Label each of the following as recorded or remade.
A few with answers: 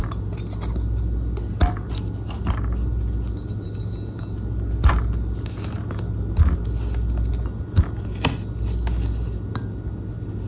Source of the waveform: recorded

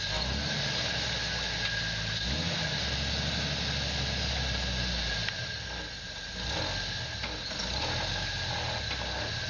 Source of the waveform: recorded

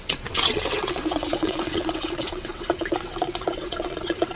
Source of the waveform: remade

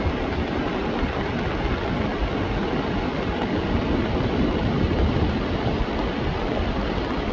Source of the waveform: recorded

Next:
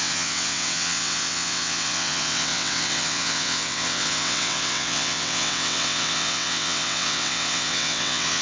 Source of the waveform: remade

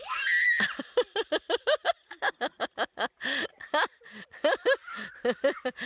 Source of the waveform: recorded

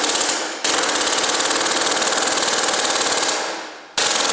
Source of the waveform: recorded